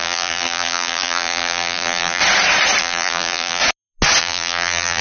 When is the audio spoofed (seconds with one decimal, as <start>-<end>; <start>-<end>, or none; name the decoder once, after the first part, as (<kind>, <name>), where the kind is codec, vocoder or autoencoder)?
0.0-2.2 (vocoder, BigVGAN v2); 2.8-3.6; 4.2-5.0